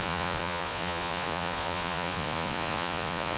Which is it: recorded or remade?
remade